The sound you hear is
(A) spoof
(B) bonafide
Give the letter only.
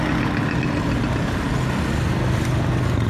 B